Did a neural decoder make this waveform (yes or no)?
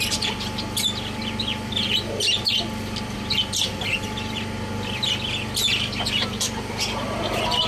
no